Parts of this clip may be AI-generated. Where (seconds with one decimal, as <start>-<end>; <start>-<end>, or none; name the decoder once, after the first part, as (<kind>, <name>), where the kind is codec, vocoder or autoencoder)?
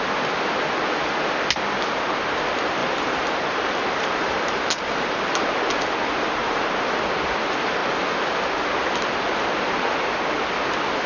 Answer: 2.8-5.2 (vocoder, BigVGAN v2); 6.4-7.0